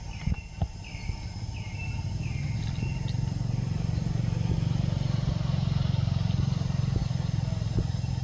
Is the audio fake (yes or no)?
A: yes